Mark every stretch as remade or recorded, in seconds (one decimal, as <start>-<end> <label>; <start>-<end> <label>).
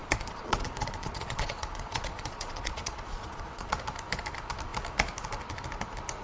0.0-3.7 remade; 3.7-6.2 recorded